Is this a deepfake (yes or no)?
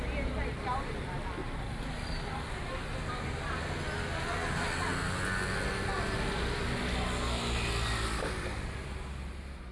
no